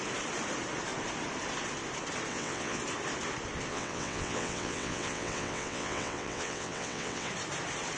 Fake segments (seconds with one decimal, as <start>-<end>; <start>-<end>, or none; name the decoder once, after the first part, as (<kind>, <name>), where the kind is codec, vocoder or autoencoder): 2.3-2.8 (vocoder, WaveNeXt); 3.7-7.3